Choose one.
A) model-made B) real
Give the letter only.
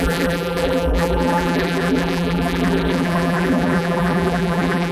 A